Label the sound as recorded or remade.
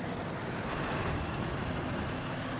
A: recorded